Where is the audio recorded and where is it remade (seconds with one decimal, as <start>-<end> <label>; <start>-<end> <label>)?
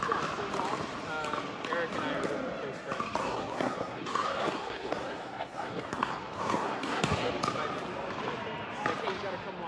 0.0-3.2 recorded; 3.2-7.3 remade; 7.3-9.7 recorded